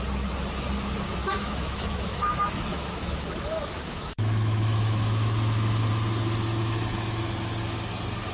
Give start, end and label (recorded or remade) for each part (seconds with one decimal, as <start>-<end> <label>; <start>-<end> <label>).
0.0-1.2 recorded; 1.2-5.9 remade; 5.9-6.6 recorded; 6.6-7.2 remade; 7.2-8.3 recorded